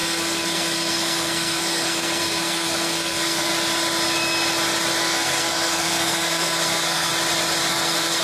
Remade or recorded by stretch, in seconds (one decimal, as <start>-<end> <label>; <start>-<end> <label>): 0.0-3.5 remade; 3.5-5.0 recorded; 5.0-7.1 remade; 7.1-7.7 recorded; 7.7-8.2 remade